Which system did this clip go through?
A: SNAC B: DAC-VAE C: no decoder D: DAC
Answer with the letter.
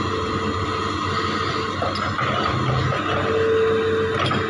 C